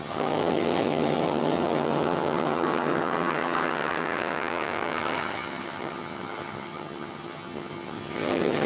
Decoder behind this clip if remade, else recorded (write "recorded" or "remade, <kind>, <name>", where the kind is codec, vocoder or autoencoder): remade, vocoder, HiFi-GAN